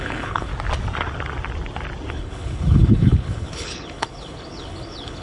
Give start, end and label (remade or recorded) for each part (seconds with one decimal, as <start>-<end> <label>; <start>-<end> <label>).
0.0-0.5 remade; 0.5-2.1 recorded; 2.1-5.2 remade